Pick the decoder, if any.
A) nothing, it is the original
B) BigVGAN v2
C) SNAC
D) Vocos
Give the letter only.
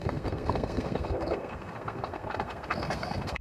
C